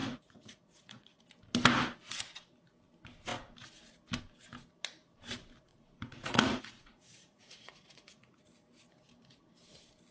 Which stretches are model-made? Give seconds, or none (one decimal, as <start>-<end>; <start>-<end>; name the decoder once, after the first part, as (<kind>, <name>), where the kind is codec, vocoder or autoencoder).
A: 0.0-1.2 (vocoder, Vocos); 5.7-8.4